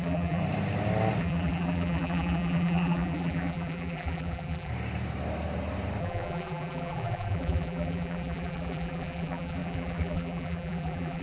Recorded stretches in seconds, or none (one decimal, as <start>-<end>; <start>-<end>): 0.4-1.2; 4.7-6.0